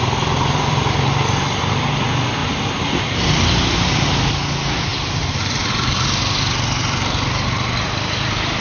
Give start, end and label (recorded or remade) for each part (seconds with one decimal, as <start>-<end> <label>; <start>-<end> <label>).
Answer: 0.0-2.4 recorded; 2.4-4.2 remade; 4.2-4.9 recorded; 4.9-6.4 remade; 6.4-8.6 recorded